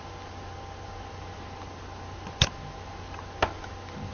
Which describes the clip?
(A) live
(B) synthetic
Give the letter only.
A